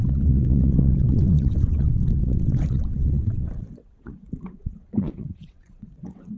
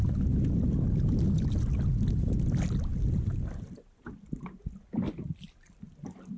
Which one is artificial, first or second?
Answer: first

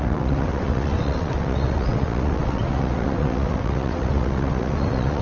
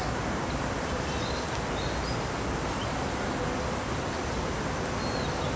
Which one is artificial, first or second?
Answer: first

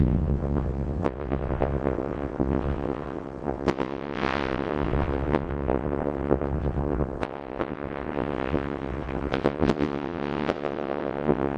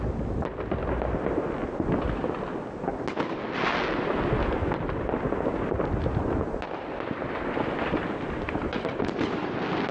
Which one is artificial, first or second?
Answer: first